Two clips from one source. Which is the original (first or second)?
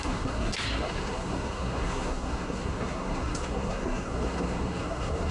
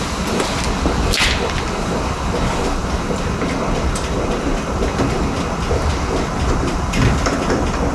second